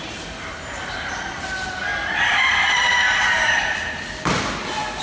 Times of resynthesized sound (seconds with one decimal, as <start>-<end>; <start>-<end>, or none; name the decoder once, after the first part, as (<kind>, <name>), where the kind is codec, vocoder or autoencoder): none

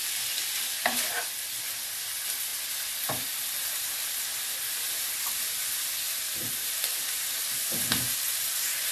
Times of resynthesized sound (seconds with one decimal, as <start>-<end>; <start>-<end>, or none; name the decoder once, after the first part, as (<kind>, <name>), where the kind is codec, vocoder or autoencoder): none